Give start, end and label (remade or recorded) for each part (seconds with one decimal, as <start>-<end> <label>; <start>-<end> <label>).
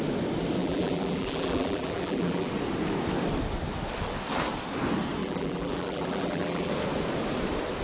0.0-0.6 recorded; 0.6-2.5 remade; 2.5-5.2 recorded; 5.2-6.7 remade; 6.7-7.8 recorded